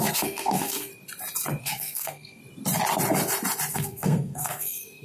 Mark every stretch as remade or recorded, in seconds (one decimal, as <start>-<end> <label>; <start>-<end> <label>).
0.0-0.9 remade; 0.9-1.6 recorded; 1.6-2.4 remade; 2.4-3.7 recorded; 3.7-5.0 remade